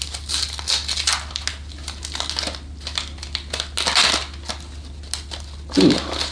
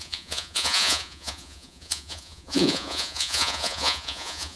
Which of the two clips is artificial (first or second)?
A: second